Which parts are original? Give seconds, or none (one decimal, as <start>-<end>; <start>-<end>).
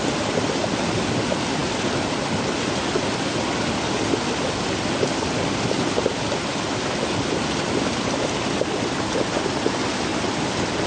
0.0-10.9